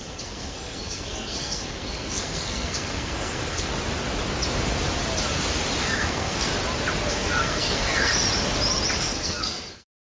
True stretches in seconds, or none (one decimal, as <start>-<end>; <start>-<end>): 3.7-5.8; 6.5-7.1; 8.1-9.0